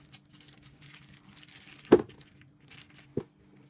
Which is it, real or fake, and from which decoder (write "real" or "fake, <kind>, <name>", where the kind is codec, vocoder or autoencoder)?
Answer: real